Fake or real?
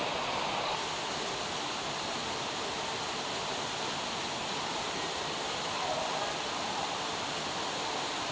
real